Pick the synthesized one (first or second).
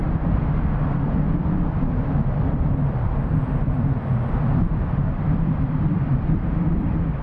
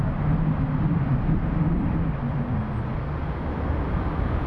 first